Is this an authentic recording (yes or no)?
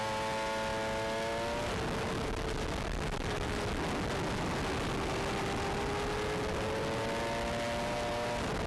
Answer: yes